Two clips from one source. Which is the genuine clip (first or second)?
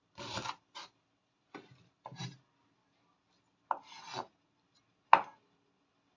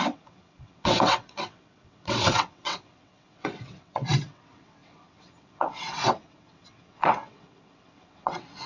first